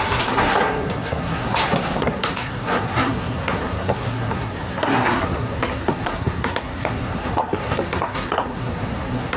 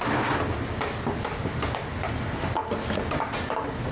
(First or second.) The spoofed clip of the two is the first